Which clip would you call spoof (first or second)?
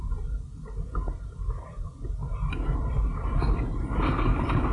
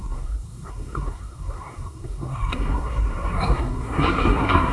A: second